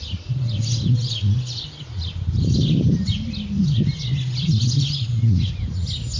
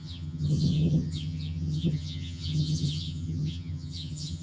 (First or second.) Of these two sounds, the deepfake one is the second